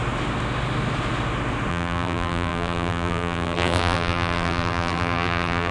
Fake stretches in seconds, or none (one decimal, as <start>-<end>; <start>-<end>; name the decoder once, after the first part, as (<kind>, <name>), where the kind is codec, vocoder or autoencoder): 1.7-5.7 (vocoder, BigVGAN v2)

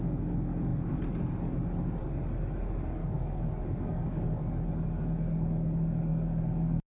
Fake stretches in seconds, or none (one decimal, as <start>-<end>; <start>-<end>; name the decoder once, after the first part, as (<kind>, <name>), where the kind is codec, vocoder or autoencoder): 3.0-4.7 (codec, DAC); 6.1-6.9

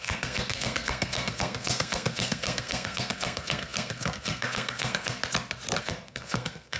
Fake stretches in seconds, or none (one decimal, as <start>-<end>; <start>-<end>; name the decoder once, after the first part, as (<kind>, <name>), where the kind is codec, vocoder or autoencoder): 0.0-5.2 (codec, SNAC); 5.8-6.8

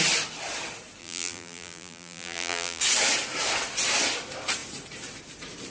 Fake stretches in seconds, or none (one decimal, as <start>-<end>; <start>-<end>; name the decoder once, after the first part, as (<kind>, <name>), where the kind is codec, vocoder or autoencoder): 1.0-2.8 (vocoder, BigVGAN v2)